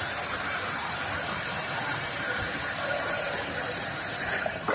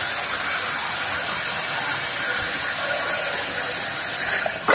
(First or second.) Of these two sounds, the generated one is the first